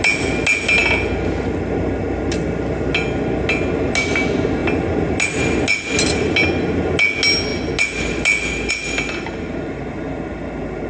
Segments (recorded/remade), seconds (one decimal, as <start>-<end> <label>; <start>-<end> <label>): 0.0-10.9 recorded